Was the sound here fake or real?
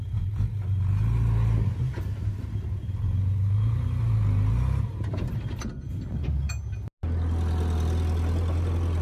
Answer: real